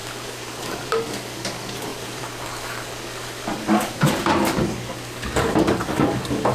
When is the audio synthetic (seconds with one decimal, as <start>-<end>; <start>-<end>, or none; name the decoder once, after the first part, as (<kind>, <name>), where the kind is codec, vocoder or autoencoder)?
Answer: 0.0-6.5 (codec, DAC)